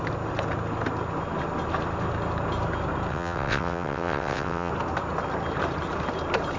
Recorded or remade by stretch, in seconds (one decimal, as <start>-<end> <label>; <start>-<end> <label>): 0.0-3.1 recorded; 3.1-4.7 remade; 4.7-6.6 recorded